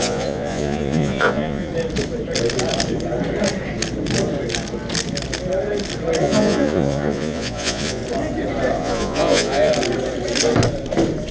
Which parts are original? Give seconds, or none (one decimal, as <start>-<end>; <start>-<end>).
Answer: 1.7-6.2; 8.0-8.8; 9.7-11.3